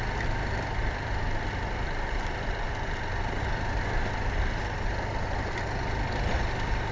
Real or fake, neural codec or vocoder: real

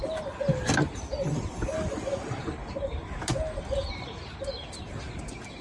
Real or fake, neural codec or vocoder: real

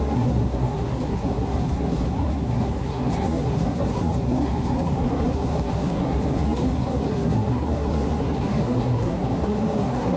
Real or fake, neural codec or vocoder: fake, codec, SNAC